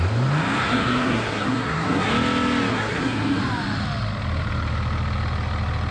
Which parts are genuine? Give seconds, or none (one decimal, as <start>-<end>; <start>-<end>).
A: 0.0-0.6; 2.1-2.7; 3.4-5.9

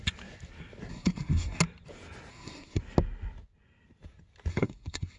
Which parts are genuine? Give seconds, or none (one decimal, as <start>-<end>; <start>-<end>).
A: 0.0-0.9; 1.6-2.3; 2.8-4.5

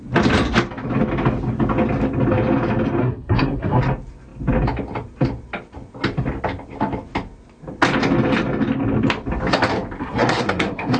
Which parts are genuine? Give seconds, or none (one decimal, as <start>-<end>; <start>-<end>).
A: 0.0-3.0; 3.8-10.0

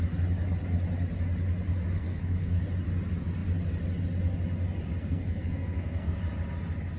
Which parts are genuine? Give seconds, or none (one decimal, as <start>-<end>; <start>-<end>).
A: 0.0-2.0; 2.6-5.0; 6.2-7.0

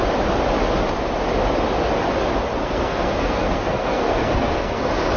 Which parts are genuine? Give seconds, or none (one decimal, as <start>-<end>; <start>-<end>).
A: 0.0-2.6; 4.8-5.2

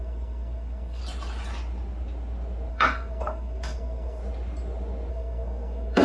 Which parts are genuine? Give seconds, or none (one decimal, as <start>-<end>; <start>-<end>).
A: 1.0-2.7; 4.2-5.1

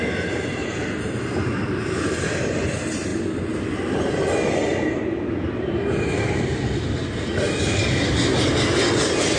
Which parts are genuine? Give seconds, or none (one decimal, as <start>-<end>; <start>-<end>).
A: 0.0-9.4